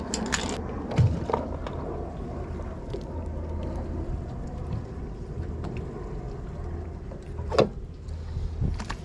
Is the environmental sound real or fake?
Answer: real